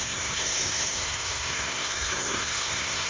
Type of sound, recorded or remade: remade